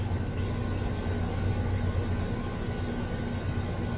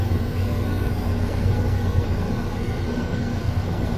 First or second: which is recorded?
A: first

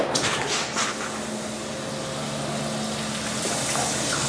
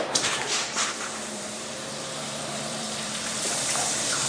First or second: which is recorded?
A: first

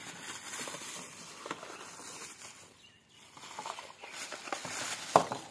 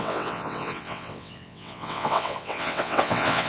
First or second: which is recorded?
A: first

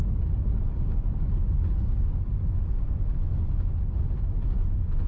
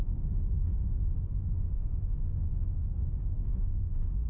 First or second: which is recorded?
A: first